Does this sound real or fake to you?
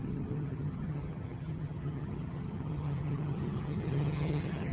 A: fake